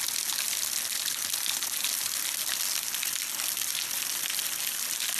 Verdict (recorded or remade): recorded